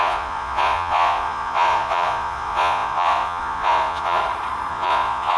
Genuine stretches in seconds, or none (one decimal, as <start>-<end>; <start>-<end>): 4.2-4.7

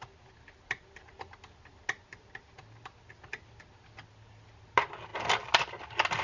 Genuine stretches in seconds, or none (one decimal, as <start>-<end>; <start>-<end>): 0.0-6.2

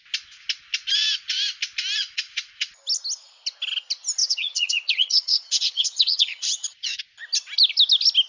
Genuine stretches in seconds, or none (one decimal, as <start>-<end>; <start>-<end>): 0.0-2.0; 2.7-4.2; 7.0-8.3

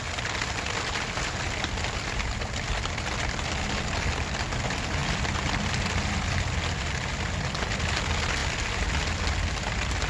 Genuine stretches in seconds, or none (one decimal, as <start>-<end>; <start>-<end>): 0.0-10.1